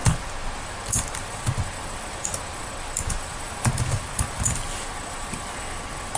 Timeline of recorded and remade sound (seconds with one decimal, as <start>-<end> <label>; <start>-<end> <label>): 0.0-6.2 recorded